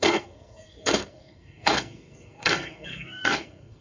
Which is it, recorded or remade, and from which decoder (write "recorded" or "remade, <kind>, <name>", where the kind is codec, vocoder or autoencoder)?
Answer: remade, codec, SNAC